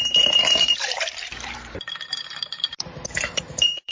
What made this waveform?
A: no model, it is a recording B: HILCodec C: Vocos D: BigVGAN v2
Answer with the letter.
D